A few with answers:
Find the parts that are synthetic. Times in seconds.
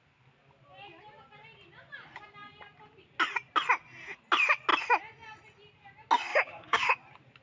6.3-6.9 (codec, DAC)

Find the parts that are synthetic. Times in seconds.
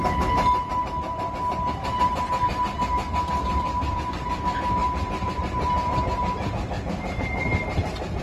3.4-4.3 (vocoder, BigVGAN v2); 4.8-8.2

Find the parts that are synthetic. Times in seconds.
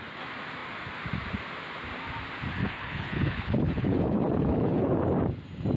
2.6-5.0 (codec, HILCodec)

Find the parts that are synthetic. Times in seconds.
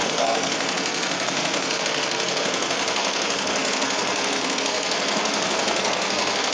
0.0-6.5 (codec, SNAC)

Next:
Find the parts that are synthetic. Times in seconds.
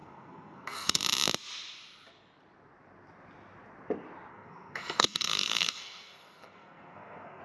0.0-1.0 (codec, SNAC); 4.3-7.4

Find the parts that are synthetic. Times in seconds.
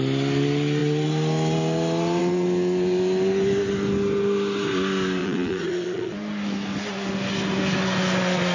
5.2-6.1 (vocoder, Vocos)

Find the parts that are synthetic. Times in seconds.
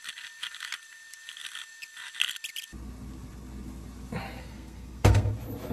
4.4-5.3 (codec, SNAC)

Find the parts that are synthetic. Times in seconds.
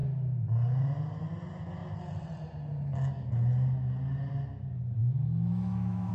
5.0-6.1 (autoencoder, DAC-VAE)